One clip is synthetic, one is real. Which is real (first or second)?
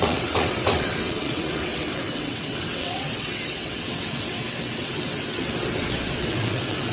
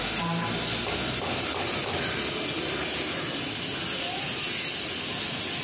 second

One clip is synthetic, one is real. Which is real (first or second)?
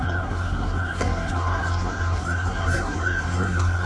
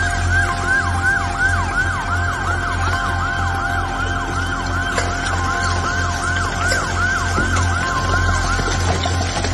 second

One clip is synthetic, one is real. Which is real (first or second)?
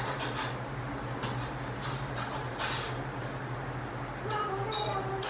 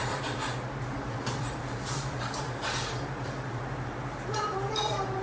first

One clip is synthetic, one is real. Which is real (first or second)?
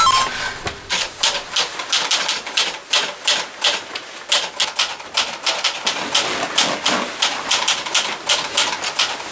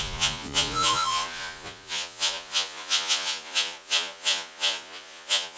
first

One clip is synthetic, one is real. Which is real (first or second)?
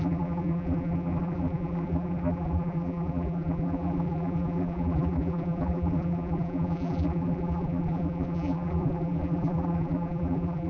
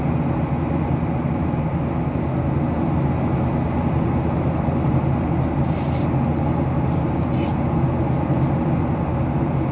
second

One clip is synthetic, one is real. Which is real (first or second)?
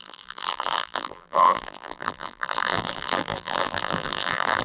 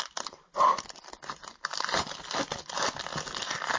second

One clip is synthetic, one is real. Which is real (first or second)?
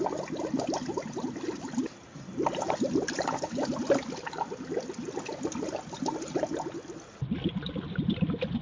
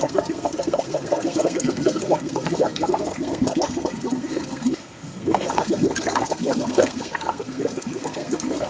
first